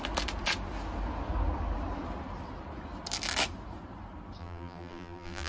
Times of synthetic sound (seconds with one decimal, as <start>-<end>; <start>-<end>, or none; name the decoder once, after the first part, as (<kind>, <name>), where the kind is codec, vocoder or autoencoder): 4.4-5.5 (vocoder, BigVGAN v2)